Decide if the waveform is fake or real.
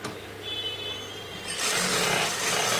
real